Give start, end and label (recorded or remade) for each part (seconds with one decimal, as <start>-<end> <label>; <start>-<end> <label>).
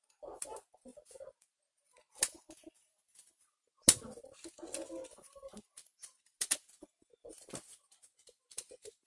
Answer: 0.0-9.1 recorded